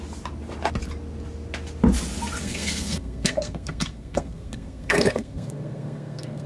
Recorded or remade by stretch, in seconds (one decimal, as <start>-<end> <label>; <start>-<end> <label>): 0.0-2.4 recorded; 2.4-6.5 remade